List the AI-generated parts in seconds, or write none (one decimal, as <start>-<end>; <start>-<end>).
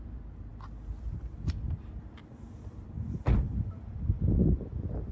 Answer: 0.0-0.5; 1.1-5.1